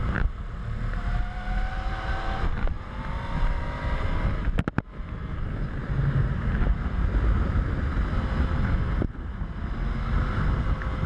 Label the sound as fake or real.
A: real